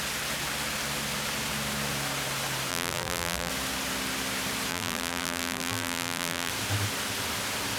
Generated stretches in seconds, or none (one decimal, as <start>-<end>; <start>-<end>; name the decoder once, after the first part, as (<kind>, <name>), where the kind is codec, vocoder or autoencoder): 2.7-3.5 (vocoder, BigVGAN v2); 4.7-6.5